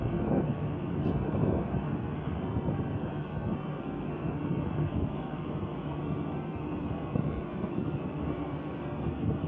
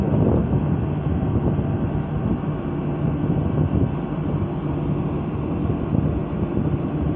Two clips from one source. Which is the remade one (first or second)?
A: first